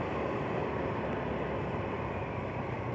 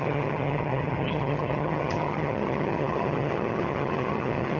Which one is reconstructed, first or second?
second